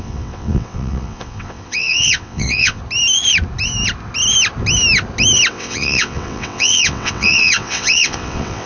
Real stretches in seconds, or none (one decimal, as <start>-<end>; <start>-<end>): 2.8-5.5